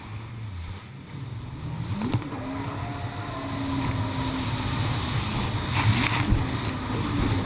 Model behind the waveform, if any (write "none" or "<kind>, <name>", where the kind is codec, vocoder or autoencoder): none